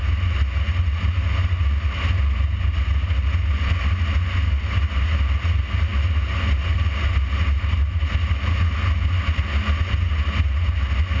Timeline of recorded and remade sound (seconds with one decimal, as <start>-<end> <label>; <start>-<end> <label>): 0.0-11.2 recorded